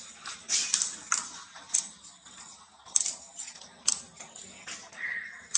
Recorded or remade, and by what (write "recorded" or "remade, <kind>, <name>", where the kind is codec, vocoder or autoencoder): recorded